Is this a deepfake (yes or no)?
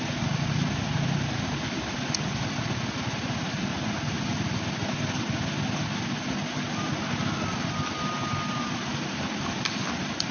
no